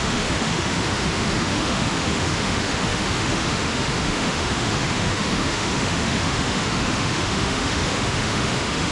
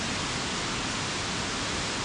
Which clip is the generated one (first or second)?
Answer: first